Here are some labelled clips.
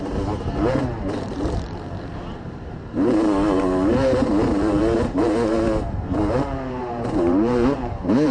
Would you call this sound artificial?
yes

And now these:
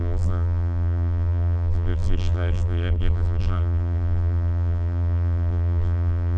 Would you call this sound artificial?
yes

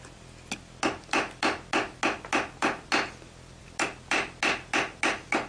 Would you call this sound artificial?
no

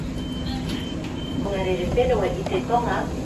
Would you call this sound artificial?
no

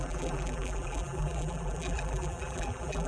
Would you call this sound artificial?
yes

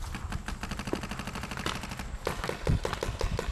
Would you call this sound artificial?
no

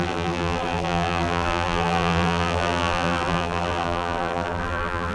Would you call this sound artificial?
yes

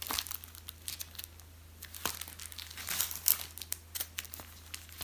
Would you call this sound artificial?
no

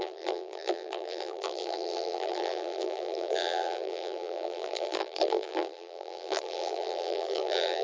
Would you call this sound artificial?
yes